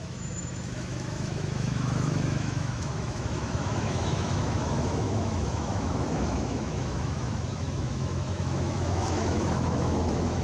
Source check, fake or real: fake